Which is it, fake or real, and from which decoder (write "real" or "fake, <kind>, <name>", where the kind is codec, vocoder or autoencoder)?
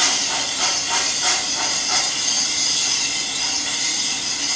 fake, vocoder, BigVGAN v2